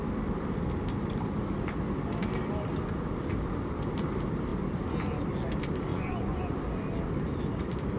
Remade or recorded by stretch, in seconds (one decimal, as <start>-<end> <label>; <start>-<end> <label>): 0.0-5.9 recorded; 5.9-6.6 remade; 6.6-8.0 recorded